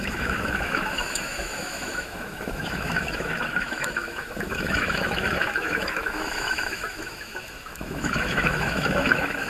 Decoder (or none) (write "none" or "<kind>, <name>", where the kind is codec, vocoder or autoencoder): autoencoder, DAC-VAE